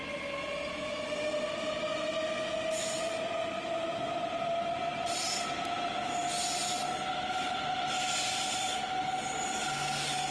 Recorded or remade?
recorded